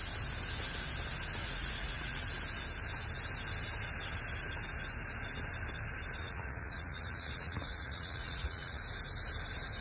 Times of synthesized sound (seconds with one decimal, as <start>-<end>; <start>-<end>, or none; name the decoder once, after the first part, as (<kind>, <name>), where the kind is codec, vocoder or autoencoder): 1.4-2.2 (vocoder, Vocos); 6.2-8.8